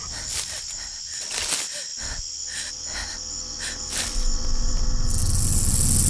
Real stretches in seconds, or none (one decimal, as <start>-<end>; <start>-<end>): 0.0-6.1